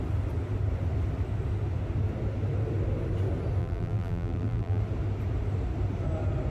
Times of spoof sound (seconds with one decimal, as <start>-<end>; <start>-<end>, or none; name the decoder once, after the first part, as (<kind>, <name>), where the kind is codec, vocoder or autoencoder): 3.6-4.8 (vocoder, BigVGAN v2)